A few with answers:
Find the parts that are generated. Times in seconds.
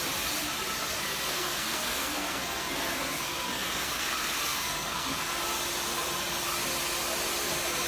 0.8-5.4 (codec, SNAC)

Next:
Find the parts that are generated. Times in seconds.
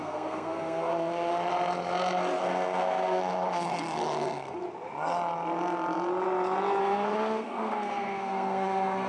0.0-1.4 (codec, SNAC); 2.4-4.6; 6.8-9.1